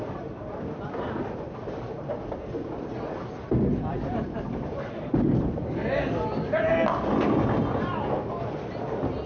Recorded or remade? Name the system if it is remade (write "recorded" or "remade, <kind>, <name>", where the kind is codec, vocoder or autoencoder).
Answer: recorded